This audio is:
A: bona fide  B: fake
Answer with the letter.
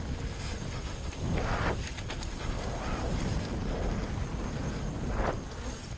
A